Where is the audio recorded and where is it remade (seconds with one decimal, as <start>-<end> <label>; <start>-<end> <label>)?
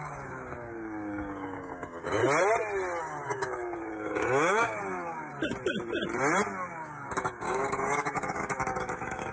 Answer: 0.0-2.2 remade; 2.2-3.0 recorded; 3.0-5.3 remade; 5.3-6.7 recorded; 6.7-9.3 remade